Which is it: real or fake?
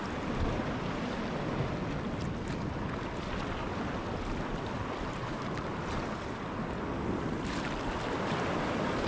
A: real